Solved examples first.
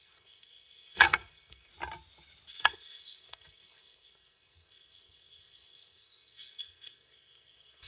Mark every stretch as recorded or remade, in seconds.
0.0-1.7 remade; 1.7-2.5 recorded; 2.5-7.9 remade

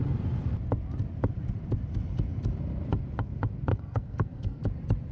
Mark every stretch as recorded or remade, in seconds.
0.0-3.7 recorded; 3.7-4.6 remade; 4.6-5.1 recorded

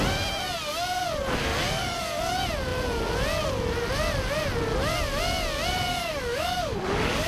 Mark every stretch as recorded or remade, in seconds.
0.0-1.5 recorded; 1.5-2.2 remade; 2.2-5.9 recorded; 5.9-7.3 remade

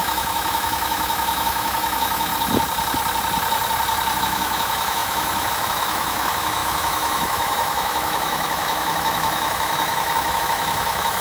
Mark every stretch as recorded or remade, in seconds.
0.0-2.3 remade; 2.3-4.2 recorded; 4.2-11.2 remade

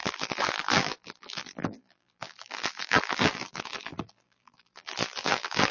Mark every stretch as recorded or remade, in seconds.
0.0-5.7 remade

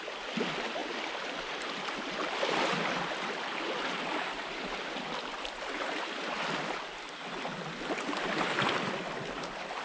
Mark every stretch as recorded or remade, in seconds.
0.0-9.8 recorded